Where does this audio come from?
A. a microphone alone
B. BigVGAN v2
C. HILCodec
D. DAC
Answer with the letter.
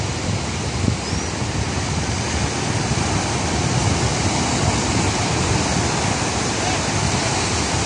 A